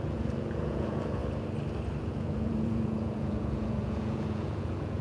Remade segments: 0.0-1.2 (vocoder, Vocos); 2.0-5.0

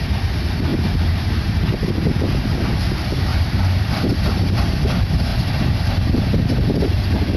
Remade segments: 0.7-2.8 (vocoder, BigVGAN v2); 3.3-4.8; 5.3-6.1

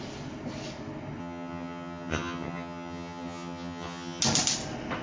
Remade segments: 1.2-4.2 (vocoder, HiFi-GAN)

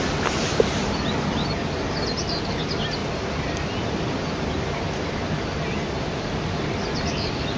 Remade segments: none